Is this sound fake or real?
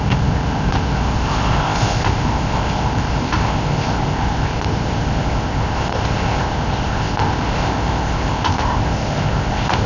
fake